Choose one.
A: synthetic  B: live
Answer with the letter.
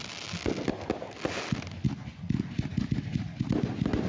B